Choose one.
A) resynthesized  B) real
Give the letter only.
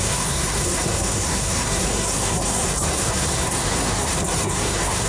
A